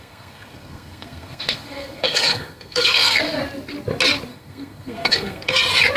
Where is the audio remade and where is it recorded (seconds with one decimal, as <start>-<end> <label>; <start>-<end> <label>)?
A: 0.0-3.2 remade; 3.2-4.3 recorded; 4.3-5.6 remade; 5.6-6.0 recorded